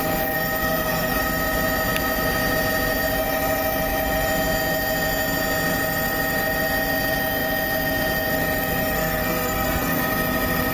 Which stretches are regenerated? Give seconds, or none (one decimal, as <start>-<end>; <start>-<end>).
0.6-1.2; 8.8-10.0